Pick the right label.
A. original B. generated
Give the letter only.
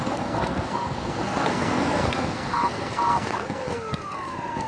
B